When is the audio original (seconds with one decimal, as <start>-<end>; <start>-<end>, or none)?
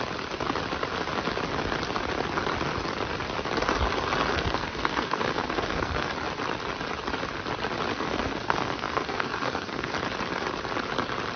0.0-4.3; 6.1-7.9; 9.9-11.4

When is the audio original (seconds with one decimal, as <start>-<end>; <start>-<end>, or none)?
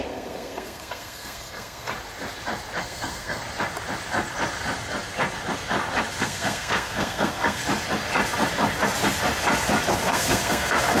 1.9-2.8; 3.4-6.2; 7.6-9.9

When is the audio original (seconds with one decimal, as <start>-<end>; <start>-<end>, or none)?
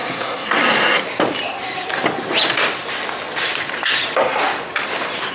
0.6-5.3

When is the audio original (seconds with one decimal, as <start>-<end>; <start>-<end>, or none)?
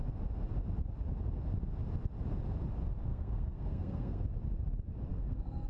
0.0-3.1; 4.2-5.1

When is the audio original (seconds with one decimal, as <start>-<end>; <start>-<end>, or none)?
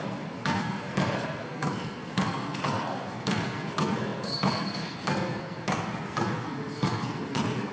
none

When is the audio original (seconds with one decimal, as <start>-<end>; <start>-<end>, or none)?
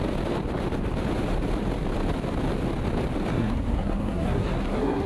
0.0-3.3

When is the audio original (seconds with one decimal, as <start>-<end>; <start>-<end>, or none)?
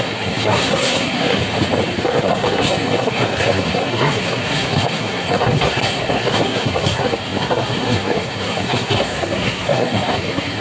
1.4-2.0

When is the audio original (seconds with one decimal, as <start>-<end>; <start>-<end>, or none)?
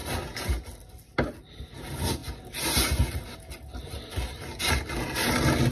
0.0-5.7